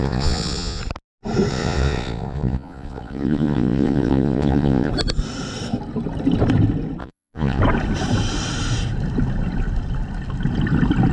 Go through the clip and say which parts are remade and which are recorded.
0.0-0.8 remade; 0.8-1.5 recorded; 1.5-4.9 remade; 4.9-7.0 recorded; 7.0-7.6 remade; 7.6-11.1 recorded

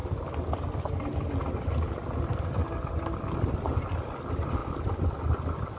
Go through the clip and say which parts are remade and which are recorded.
0.0-5.8 recorded

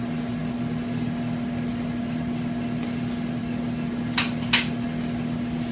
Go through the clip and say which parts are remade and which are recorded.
0.0-5.7 recorded